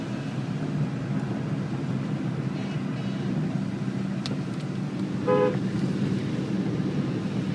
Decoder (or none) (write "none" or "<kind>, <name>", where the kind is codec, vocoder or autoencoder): none